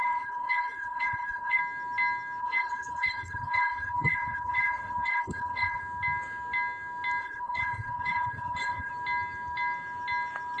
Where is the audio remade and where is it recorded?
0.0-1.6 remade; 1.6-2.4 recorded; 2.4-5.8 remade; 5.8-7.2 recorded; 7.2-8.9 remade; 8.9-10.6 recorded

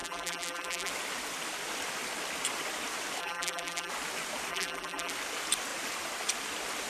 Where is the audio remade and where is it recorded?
0.0-0.9 remade; 0.9-3.2 recorded; 3.2-3.9 remade; 3.9-4.5 recorded; 4.5-5.1 remade; 5.1-6.9 recorded

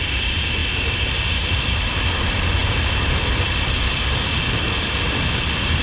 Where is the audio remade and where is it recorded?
0.0-5.8 recorded

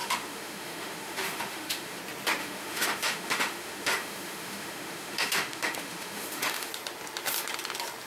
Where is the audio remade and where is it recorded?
0.0-2.0 remade; 2.0-2.4 recorded; 2.4-6.7 remade; 6.7-8.1 recorded

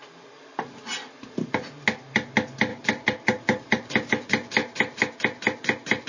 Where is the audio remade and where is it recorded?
0.0-2.7 recorded; 2.7-4.1 remade; 4.1-4.6 recorded; 4.6-6.1 remade

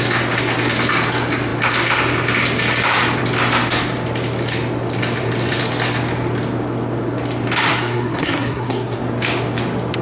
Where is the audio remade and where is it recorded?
0.0-7.7 recorded; 7.7-9.0 remade; 9.0-10.0 recorded